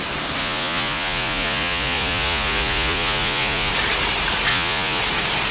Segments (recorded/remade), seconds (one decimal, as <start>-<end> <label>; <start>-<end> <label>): 0.0-0.4 recorded; 0.4-3.7 remade; 3.7-4.5 recorded; 4.5-5.0 remade; 5.0-5.5 recorded